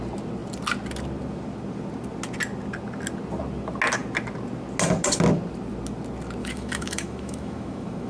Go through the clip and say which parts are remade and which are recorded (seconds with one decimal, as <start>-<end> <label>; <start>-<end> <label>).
0.0-6.4 recorded; 6.4-8.1 remade